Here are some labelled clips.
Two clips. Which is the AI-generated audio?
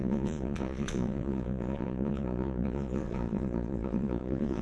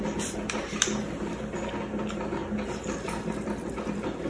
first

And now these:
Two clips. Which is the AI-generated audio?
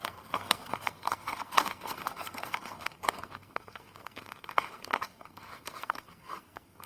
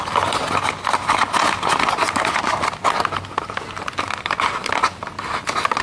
first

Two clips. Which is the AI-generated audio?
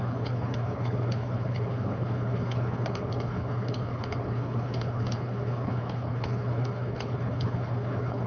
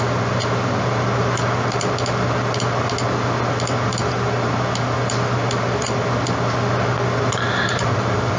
first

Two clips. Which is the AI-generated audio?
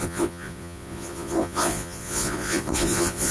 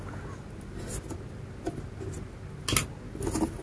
first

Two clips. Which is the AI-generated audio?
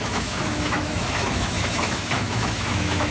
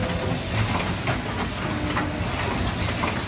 first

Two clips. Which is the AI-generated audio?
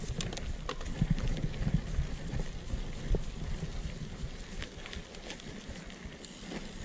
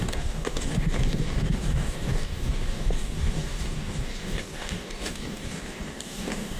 second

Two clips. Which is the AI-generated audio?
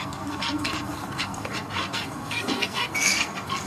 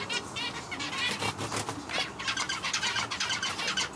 first